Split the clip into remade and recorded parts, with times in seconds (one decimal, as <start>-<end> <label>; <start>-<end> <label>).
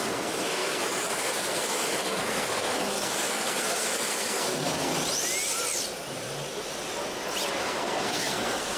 0.0-4.9 remade; 4.9-7.6 recorded; 7.6-8.8 remade